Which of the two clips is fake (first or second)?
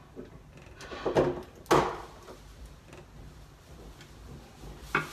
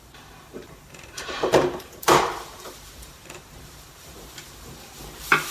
second